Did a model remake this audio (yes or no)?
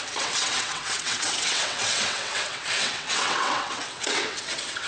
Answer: yes